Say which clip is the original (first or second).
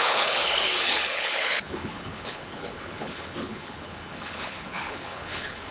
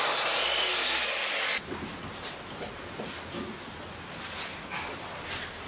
second